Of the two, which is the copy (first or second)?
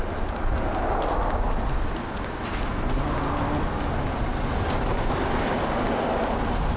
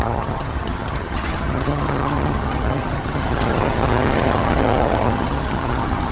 second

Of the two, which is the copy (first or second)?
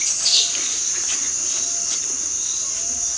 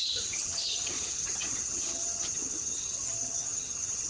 second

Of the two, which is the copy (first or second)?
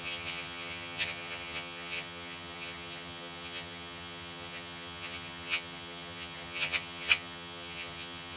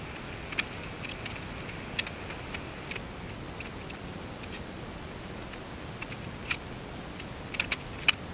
first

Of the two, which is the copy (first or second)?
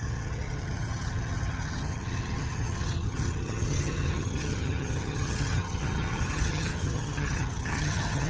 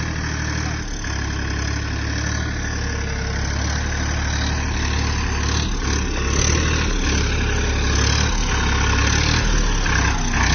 first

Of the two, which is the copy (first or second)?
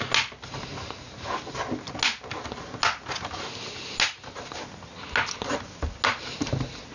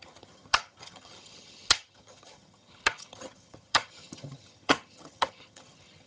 second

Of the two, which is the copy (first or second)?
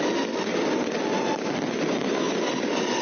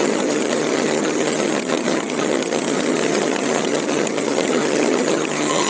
second